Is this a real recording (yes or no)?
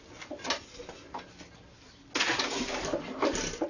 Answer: yes